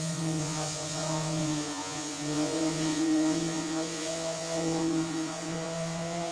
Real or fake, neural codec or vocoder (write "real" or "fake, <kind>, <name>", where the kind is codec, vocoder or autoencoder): fake, vocoder, Vocos